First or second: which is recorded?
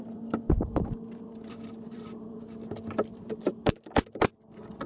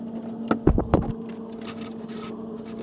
second